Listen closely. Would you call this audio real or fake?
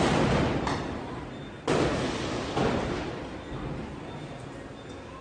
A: real